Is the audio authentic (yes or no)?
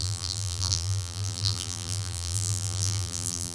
no